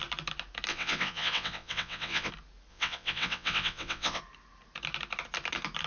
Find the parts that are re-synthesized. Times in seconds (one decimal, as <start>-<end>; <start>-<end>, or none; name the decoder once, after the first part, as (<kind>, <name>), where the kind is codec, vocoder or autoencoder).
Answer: 0.7-2.3 (vocoder, WaveNeXt); 2.7-4.2